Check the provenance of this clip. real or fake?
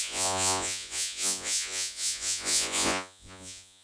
fake